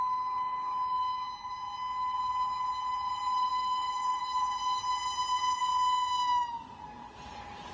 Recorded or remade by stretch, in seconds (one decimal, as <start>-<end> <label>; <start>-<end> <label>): 0.0-3.5 recorded; 3.5-4.8 remade; 4.8-7.7 recorded